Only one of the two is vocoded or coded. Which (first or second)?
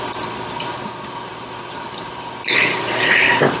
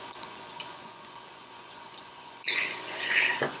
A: second